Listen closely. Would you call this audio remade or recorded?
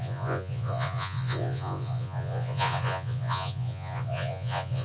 remade